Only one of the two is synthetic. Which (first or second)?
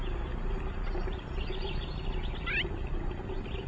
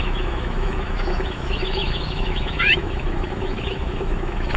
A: second